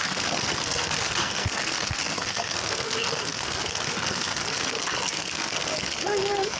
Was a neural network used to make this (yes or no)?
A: yes